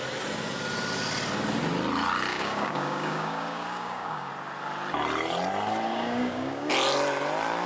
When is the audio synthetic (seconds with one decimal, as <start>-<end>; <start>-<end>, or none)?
2.3-4.3; 5.9-6.7